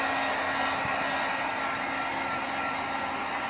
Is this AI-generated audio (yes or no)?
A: no